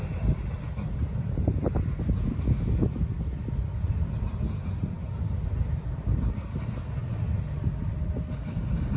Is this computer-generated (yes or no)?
no